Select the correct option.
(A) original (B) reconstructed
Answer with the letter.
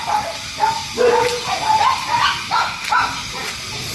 A